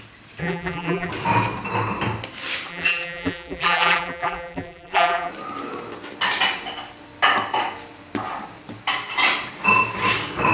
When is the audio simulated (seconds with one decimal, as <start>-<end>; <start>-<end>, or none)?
0.4-1.1; 2.7-5.3